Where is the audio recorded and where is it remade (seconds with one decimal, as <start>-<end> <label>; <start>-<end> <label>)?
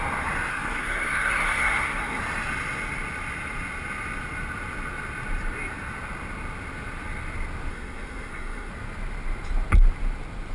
0.0-0.5 recorded; 0.5-2.2 remade; 2.2-7.7 recorded; 7.7-8.7 remade; 8.7-10.5 recorded